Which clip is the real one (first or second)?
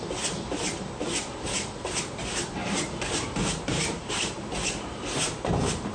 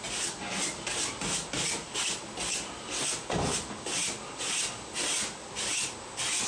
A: second